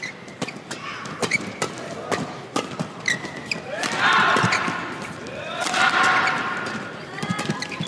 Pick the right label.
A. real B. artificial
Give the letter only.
B